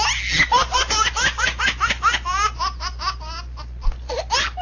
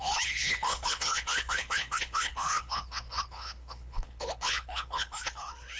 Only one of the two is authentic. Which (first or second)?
first